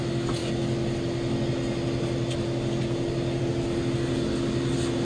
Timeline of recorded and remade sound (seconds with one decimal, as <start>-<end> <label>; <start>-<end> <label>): 0.0-5.0 recorded